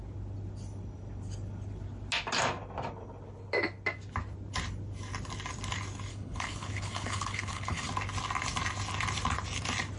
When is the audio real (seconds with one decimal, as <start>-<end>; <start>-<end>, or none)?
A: 0.0-6.1; 7.9-10.0